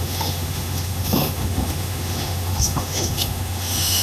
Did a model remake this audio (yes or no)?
yes